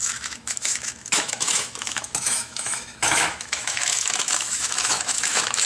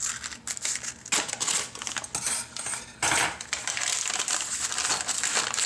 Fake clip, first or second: first